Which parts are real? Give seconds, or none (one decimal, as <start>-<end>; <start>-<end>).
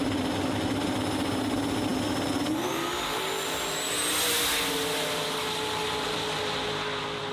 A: 0.0-7.3